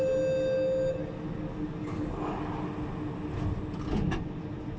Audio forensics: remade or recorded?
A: recorded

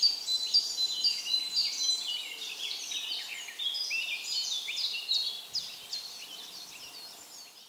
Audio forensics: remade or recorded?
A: recorded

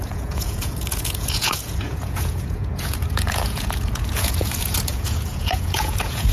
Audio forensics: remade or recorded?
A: remade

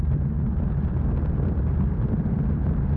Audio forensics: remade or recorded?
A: recorded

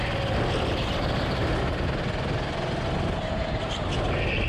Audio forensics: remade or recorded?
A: recorded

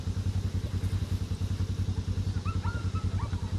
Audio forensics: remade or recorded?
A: recorded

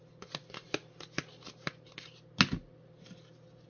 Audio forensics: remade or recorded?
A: recorded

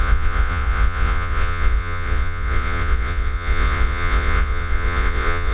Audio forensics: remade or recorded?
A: remade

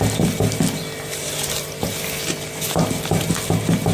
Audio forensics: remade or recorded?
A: recorded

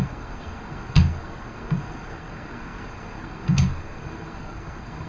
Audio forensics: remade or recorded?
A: remade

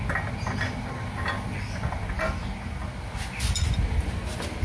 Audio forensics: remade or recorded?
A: recorded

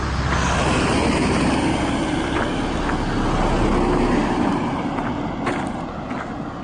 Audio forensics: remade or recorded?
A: recorded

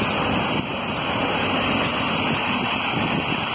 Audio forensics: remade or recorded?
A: recorded